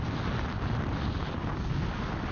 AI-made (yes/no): no